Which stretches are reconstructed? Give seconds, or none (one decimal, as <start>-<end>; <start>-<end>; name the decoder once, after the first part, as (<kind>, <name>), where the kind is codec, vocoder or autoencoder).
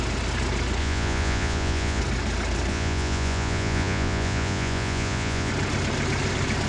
0.8-2.0 (vocoder, Vocos); 2.7-5.5